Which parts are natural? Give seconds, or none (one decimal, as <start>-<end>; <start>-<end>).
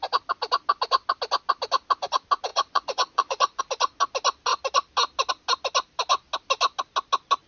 0.0-2.5; 3.6-7.5